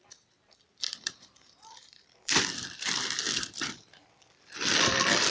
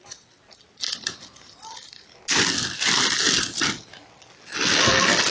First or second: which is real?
second